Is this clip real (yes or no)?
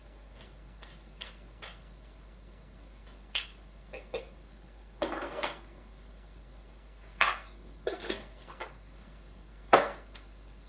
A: no